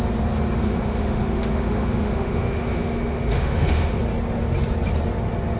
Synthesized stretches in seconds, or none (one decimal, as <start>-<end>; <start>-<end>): 0.6-4.0